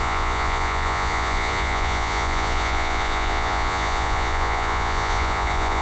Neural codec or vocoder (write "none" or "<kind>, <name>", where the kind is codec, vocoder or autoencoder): vocoder, Vocos